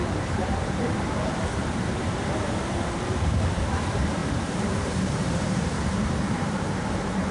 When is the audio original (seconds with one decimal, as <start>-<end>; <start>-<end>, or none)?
none